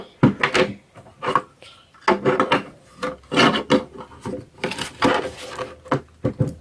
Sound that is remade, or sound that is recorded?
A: recorded